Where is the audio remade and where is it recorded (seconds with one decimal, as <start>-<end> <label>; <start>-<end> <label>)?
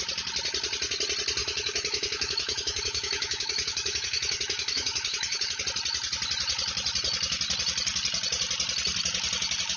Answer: 0.0-1.4 recorded; 1.4-5.6 remade; 5.6-9.8 recorded